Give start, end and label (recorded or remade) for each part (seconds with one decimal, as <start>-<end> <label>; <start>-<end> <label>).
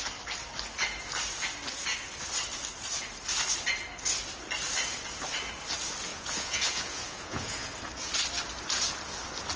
0.0-6.1 recorded; 6.1-7.7 remade; 7.7-9.6 recorded